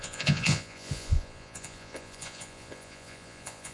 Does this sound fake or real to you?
fake